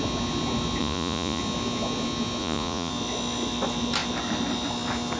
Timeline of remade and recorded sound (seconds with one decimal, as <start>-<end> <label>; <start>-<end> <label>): 0.0-0.8 recorded; 0.8-1.4 remade; 1.4-2.4 recorded; 2.4-2.9 remade; 2.9-5.2 recorded